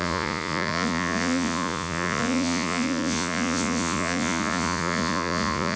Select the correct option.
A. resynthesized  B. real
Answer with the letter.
A